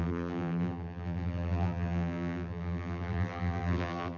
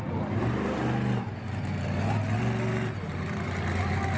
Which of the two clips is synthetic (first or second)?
first